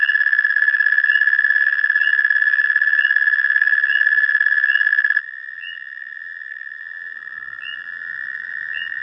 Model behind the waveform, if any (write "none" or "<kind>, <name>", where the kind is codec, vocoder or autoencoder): vocoder, BigVGAN v2